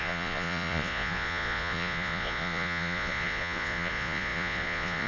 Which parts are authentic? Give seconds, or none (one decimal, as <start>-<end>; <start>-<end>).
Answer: none